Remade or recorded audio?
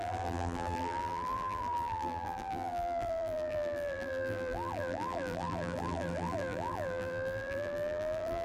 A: remade